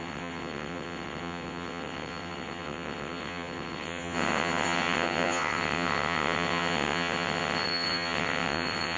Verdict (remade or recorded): remade